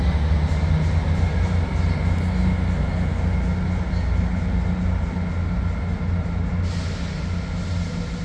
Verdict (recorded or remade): recorded